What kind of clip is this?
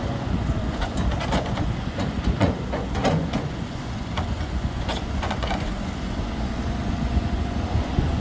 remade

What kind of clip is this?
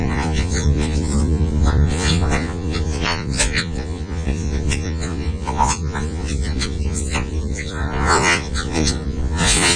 remade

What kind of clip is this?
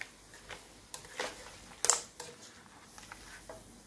recorded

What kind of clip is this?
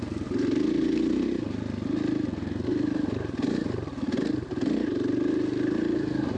recorded